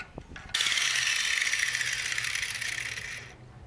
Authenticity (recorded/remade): recorded